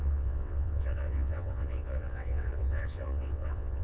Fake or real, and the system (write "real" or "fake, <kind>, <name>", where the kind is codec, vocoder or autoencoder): fake, vocoder, WaveNeXt